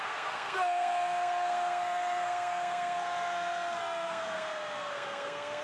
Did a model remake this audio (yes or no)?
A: yes